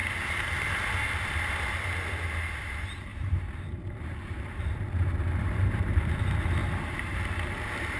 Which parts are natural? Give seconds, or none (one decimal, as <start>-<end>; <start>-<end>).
0.0-3.1; 6.1-6.6